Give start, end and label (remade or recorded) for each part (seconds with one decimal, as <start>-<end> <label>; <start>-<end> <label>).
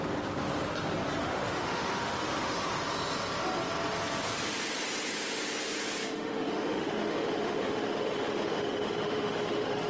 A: 0.0-1.2 recorded; 1.2-2.8 remade; 2.8-6.0 recorded; 6.0-9.9 remade